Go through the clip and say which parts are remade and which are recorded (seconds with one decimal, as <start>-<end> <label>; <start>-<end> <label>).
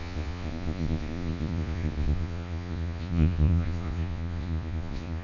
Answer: 0.0-5.2 remade